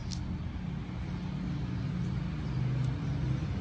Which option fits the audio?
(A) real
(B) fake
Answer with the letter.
A